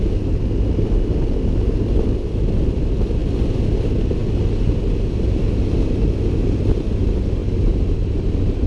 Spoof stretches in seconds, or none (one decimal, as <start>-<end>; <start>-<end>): 7.4-8.7